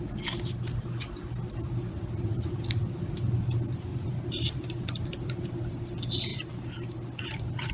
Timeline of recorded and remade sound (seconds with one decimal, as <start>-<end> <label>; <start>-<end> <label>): 0.0-3.9 recorded; 3.9-5.6 remade; 5.6-6.3 recorded; 6.3-7.7 remade